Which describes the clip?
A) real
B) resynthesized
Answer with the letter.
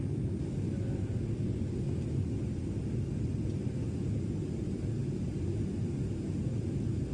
A